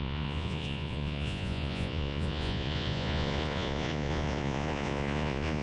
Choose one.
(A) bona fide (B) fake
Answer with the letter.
B